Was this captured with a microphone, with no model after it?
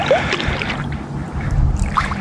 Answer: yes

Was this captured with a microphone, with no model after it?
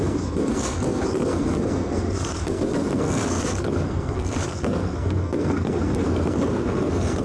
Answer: no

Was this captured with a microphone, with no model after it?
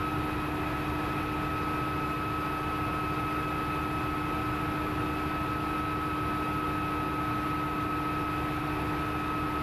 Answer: yes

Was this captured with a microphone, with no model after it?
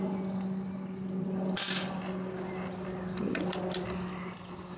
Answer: yes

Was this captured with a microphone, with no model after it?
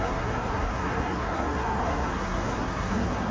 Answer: no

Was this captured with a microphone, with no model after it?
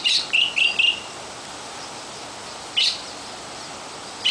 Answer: yes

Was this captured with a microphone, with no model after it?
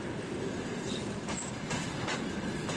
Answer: yes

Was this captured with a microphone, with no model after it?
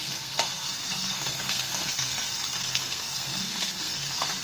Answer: no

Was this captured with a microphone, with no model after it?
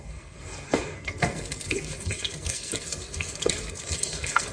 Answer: no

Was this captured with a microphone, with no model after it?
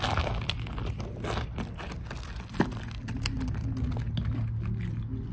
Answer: yes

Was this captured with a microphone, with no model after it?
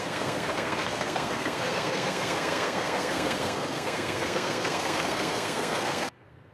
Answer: no